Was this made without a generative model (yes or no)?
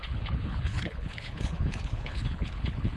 no